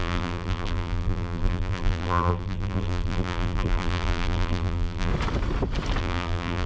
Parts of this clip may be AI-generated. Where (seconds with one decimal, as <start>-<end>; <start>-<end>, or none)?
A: 0.0-5.1; 6.0-6.7